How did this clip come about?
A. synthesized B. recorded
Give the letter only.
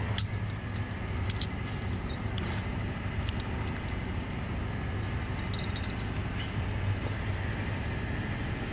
B